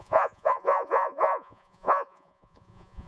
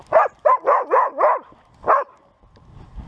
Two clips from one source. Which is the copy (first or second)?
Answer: first